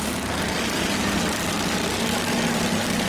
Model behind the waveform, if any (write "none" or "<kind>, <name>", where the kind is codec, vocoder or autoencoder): none